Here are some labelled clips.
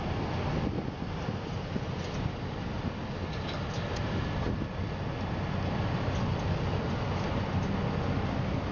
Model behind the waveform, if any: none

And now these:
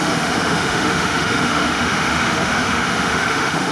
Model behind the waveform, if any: autoencoder, DAC-VAE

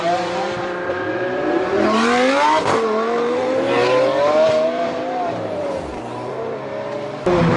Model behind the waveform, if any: vocoder, BigVGAN v2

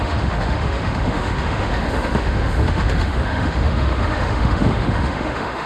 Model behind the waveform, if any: autoencoder, DAC-VAE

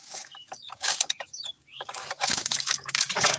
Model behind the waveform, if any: codec, DAC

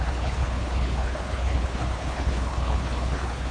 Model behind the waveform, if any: codec, HILCodec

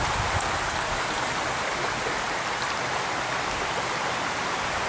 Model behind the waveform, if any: none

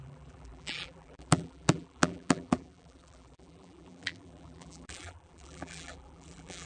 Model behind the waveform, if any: vocoder, BigVGAN v2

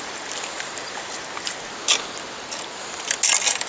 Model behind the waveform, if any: none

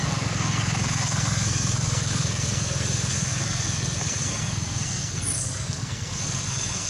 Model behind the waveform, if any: codec, SNAC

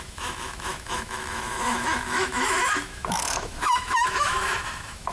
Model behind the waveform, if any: autoencoder, DAC-VAE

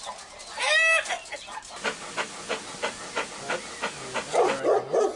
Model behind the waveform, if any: none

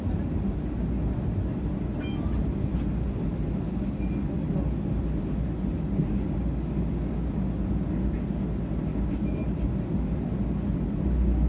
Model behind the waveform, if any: none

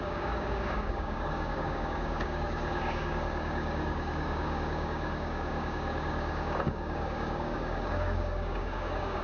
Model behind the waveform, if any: codec, DAC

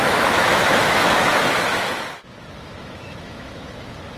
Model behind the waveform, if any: autoencoder, DAC-VAE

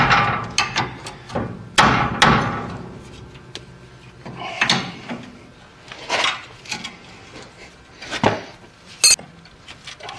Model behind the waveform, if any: none